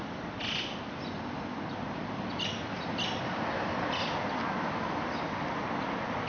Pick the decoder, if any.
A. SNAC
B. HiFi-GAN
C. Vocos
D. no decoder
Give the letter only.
D